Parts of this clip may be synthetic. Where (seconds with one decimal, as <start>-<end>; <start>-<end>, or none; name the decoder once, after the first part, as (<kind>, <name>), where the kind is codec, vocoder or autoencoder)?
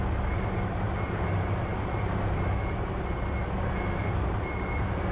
none